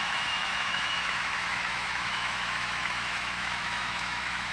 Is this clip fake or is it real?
fake